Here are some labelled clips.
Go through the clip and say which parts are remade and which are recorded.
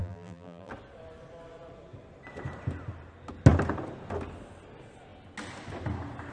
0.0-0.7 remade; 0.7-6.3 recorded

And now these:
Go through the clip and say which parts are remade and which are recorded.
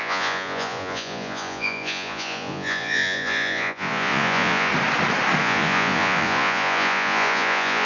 0.0-4.7 remade; 4.7-5.4 recorded; 5.4-7.8 remade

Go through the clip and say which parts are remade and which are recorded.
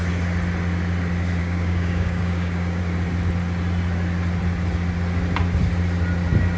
0.0-1.4 recorded; 1.4-2.8 remade; 2.8-6.6 recorded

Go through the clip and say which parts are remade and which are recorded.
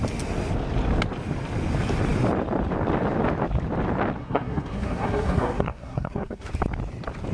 0.0-4.2 recorded; 4.2-6.5 remade; 6.5-7.3 recorded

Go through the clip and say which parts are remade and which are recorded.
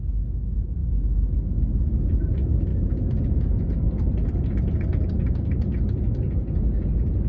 0.0-0.8 remade; 0.8-2.1 recorded; 2.1-2.7 remade; 2.7-7.3 recorded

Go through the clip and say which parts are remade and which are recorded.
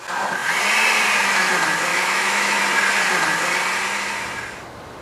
0.0-1.9 recorded; 1.9-2.6 remade; 2.6-5.0 recorded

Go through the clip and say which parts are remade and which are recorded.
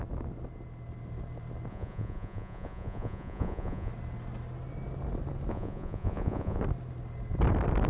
0.0-1.7 recorded; 1.7-3.9 remade; 3.9-5.5 recorded; 5.5-6.6 remade; 6.6-7.9 recorded